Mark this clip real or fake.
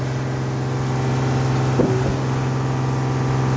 real